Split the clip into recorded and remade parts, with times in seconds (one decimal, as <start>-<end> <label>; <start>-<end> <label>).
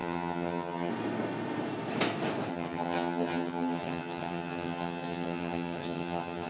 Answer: 0.0-0.9 remade; 0.9-2.5 recorded; 2.5-6.5 remade